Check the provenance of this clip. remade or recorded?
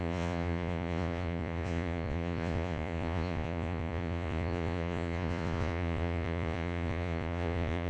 remade